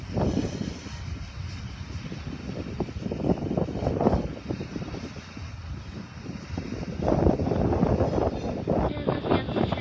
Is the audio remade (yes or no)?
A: no